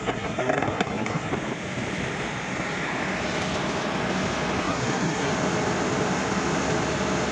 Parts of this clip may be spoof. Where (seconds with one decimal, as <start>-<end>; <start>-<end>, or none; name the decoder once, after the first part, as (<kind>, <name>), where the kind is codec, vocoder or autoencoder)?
0.0-1.3 (codec, SNAC); 4.6-5.3